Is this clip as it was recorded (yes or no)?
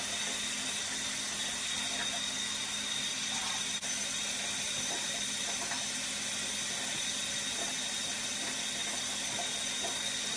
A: yes